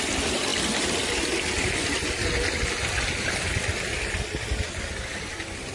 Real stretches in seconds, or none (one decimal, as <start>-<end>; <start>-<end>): 0.0-5.7